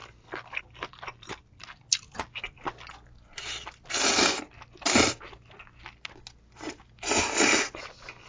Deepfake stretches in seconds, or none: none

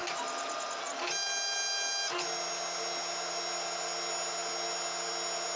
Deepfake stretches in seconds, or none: none

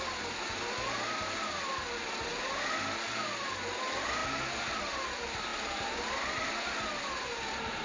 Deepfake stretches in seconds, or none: none

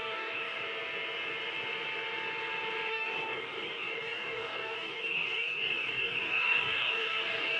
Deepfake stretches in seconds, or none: 0.0-0.6 (codec, DAC); 2.9-7.6

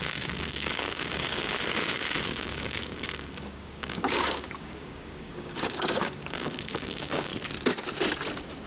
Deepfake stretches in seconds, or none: 0.0-7.3 (codec, DAC)